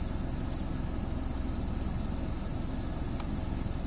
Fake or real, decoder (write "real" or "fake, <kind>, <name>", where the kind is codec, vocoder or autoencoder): real